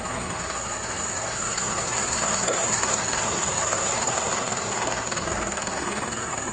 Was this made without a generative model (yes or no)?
no